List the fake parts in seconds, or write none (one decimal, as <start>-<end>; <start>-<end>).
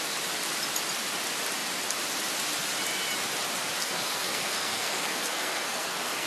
3.8-6.3